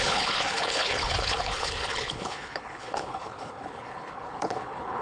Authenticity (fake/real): fake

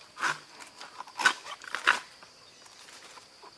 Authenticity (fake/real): real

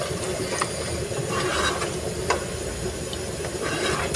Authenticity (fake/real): real